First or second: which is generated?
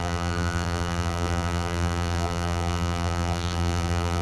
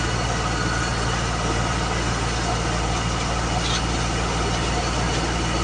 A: first